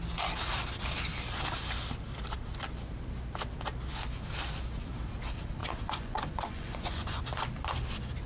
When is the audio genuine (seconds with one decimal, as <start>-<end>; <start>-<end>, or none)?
0.0-5.6; 7.2-8.3